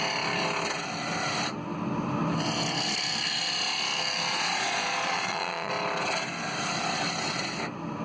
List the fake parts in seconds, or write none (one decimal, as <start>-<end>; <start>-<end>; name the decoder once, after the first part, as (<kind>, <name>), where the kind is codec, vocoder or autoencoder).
4.3-5.7 (vocoder, Vocos)